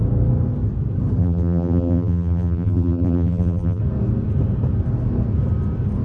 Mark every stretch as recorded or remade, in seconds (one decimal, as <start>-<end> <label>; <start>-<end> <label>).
0.0-1.2 recorded; 1.2-3.8 remade; 3.8-6.0 recorded